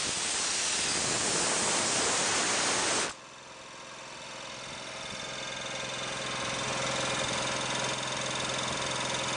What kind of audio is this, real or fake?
real